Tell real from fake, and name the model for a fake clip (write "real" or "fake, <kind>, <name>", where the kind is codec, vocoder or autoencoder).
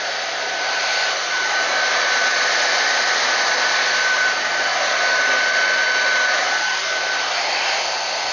fake, vocoder, BigVGAN v2